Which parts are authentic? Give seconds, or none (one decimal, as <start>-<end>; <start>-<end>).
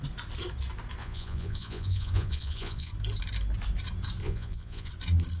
0.0-1.0; 2.9-4.2; 4.9-5.4